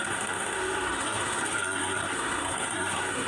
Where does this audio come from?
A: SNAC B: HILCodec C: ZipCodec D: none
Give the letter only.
A